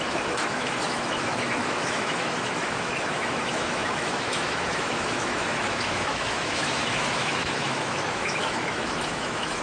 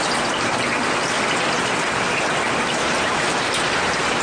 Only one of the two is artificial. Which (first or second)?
first